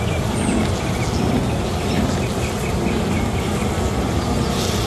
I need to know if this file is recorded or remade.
recorded